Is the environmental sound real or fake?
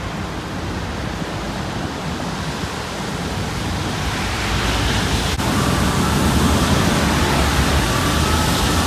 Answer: real